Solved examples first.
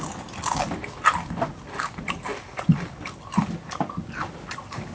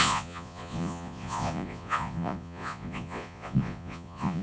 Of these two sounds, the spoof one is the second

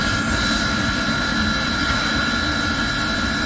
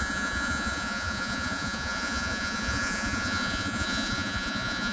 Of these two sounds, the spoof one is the second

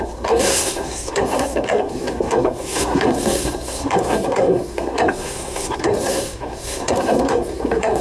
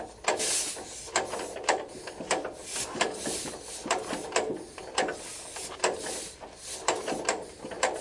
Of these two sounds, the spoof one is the first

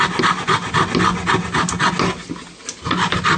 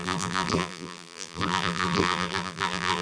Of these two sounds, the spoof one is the second